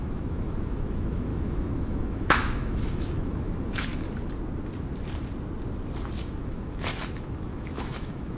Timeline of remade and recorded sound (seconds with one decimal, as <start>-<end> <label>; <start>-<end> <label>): 0.0-3.9 remade; 3.9-6.2 recorded; 6.2-8.4 remade